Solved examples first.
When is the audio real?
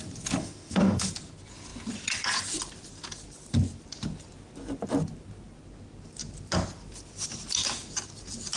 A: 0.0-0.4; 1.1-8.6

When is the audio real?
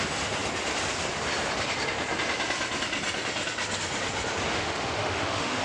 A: 0.0-4.5